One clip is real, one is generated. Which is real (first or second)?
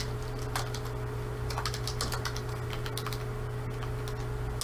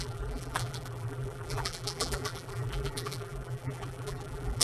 first